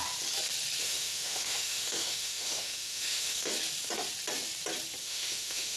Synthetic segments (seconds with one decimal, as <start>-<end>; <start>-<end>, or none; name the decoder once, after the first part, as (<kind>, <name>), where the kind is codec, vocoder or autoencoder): 0.8-3.5 (autoencoder, DAC-VAE); 5.0-5.8